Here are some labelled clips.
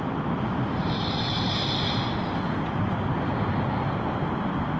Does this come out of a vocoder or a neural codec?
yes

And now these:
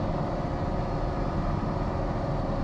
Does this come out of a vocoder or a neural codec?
no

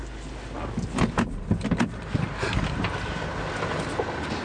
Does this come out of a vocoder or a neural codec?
no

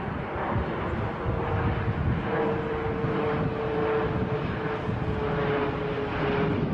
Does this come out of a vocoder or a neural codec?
no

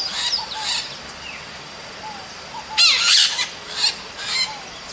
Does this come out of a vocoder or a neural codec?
no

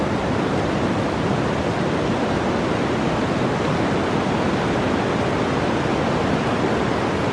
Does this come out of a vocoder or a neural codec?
no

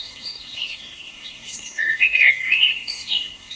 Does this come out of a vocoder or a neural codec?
yes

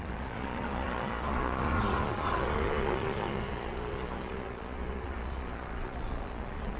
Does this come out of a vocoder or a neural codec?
yes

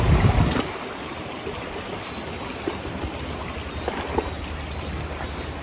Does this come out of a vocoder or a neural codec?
no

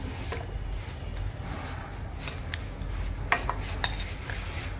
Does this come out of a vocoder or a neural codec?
no